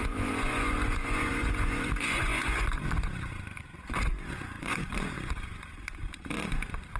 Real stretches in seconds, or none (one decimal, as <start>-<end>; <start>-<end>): none